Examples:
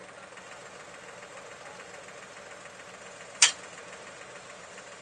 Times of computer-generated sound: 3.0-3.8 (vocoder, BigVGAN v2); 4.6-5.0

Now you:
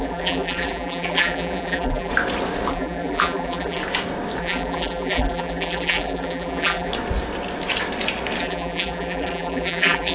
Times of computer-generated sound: 0.0-2.1 (vocoder, BigVGAN v2); 2.7-3.8; 4.4-6.9; 8.4-10.1

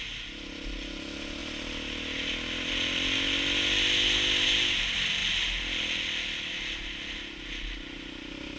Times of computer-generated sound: none

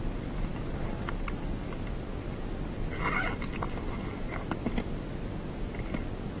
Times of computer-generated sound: none

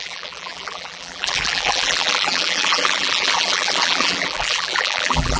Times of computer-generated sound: 0.0-5.4 (vocoder, BigVGAN v2)

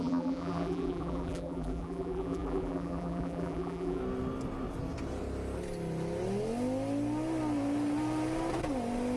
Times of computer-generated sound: 0.0-4.0 (vocoder, BigVGAN v2)

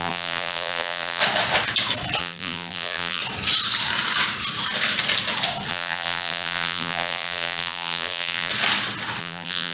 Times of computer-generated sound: 0.0-1.2 (vocoder, BigVGAN v2); 2.2-3.2; 5.7-8.5; 9.2-9.7